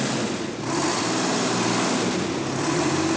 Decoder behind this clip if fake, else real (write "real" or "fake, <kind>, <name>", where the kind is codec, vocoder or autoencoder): real